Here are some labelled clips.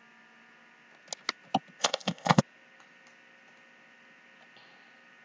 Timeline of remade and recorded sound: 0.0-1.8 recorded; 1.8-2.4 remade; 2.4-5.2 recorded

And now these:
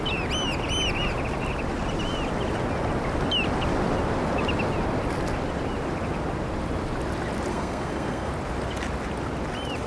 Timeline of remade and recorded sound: 0.0-7.5 recorded; 7.5-8.3 remade; 8.3-9.9 recorded